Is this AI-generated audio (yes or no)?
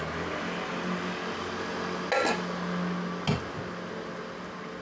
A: no